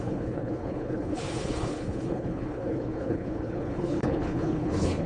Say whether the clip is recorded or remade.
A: remade